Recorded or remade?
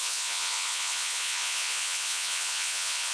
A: remade